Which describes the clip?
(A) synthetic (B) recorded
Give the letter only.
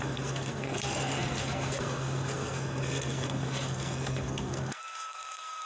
A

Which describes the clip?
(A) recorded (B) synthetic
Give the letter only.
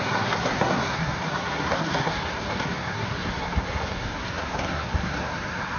B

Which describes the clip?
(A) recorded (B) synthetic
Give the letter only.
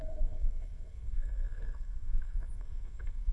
B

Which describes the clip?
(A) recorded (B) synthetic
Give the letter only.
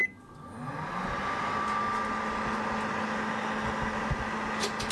A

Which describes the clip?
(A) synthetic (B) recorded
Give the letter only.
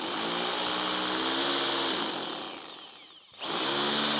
B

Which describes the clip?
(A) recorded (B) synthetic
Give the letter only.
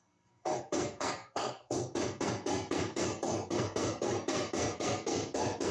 B